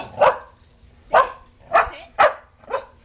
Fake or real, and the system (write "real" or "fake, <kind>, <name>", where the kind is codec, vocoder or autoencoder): fake, vocoder, BigVGAN v2